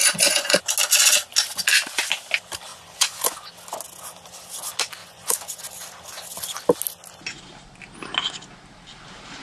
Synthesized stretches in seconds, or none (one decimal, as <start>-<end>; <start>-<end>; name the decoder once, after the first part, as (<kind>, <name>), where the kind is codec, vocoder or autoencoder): 0.0-0.6 (vocoder, Vocos); 2.7-3.5; 5.0-5.7

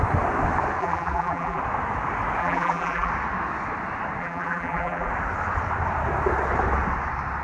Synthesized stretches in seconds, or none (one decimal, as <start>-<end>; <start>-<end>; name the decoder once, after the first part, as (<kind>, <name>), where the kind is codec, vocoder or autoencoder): 0.8-1.6 (vocoder, BigVGAN v2); 2.4-3.1; 4.2-5.1